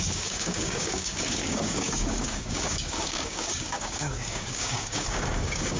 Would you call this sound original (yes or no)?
no